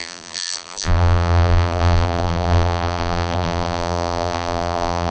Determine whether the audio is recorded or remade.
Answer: remade